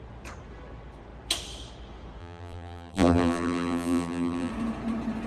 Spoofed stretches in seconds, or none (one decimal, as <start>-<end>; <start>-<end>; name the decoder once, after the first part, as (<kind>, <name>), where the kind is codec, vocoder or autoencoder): 2.2-4.5 (vocoder, BigVGAN v2)